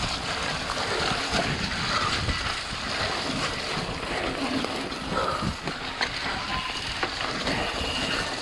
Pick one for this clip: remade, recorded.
recorded